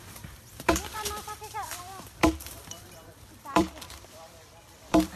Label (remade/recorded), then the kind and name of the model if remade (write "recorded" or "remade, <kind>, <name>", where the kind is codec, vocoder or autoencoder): remade, vocoder, BigVGAN v2